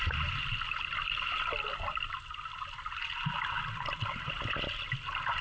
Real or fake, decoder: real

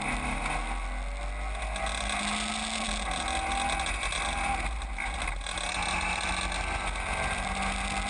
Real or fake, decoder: real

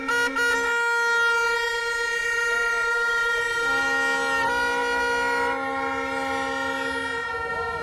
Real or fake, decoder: real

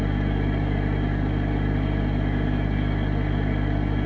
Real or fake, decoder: real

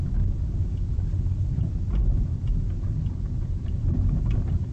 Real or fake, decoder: real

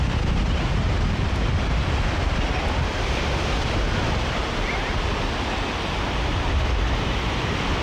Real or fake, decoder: fake, vocoder, BigVGAN v2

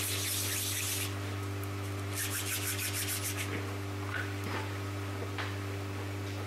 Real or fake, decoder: fake, vocoder, BigVGAN v2